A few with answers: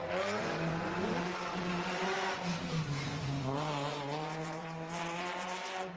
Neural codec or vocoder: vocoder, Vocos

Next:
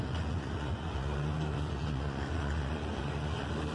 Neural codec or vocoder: vocoder, Vocos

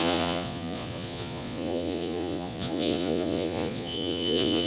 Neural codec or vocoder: vocoder, Vocos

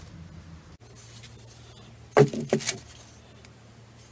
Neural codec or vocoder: none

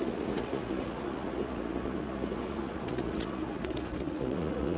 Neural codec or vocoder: vocoder, Vocos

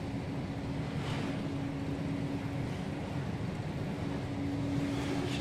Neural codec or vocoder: none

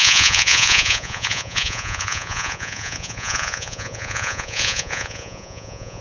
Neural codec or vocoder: vocoder, Vocos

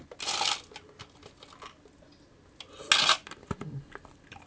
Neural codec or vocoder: none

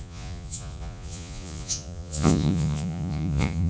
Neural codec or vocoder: vocoder, Vocos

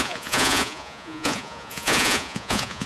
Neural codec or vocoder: vocoder, Vocos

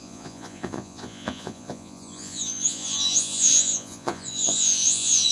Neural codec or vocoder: vocoder, Vocos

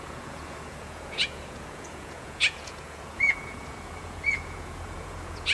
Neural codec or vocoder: vocoder, Vocos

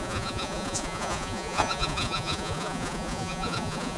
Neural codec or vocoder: vocoder, Vocos